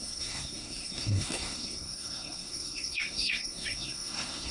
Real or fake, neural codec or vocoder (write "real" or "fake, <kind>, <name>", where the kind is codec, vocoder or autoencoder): fake, codec, SNAC